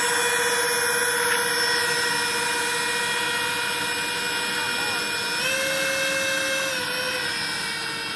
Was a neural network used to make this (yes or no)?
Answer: no